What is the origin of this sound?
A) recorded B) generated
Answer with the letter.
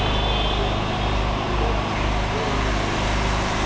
A